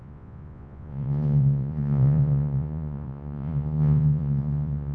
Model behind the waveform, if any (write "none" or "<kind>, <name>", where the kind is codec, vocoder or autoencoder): vocoder, Vocos